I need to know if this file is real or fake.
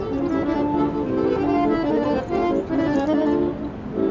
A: real